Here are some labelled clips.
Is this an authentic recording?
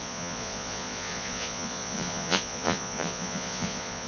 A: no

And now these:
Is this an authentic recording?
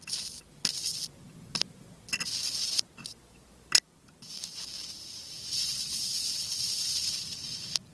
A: yes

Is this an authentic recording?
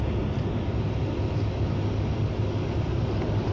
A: no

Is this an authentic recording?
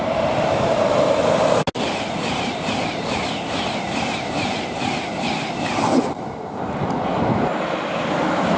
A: yes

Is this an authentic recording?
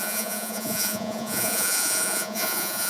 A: no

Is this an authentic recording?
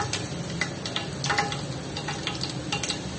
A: yes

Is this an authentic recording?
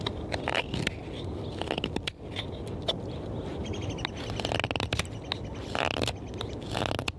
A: yes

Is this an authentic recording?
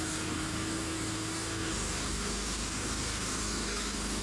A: no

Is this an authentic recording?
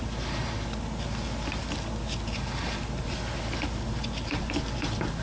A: yes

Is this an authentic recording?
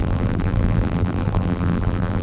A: no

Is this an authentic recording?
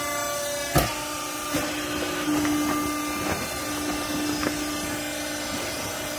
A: yes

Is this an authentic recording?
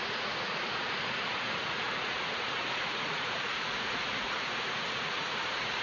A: no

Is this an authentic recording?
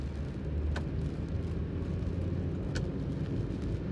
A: yes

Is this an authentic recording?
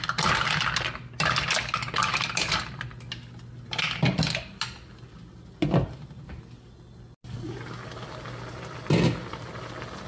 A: yes